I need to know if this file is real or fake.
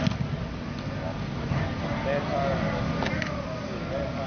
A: real